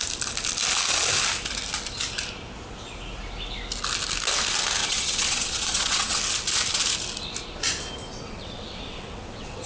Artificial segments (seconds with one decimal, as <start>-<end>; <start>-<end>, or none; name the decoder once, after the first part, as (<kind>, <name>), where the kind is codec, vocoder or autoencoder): 4.8-6.2 (vocoder, WaveNeXt); 8.1-9.7